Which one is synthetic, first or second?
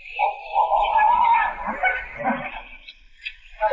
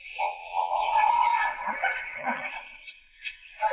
second